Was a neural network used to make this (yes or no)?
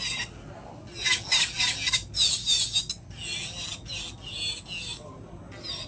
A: no